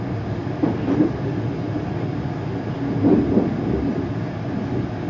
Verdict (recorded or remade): recorded